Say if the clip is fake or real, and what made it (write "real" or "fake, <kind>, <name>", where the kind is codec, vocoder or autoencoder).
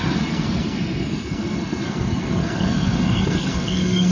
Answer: fake, codec, SNAC